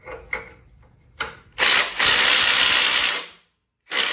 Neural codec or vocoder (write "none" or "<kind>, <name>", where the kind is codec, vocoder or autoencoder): none